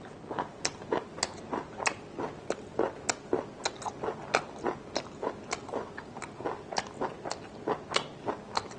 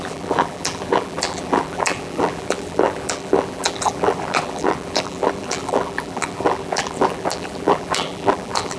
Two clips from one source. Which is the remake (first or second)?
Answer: second